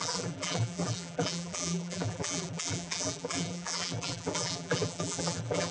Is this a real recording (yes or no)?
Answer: no